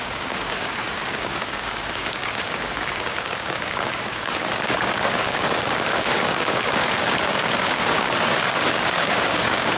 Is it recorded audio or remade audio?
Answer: remade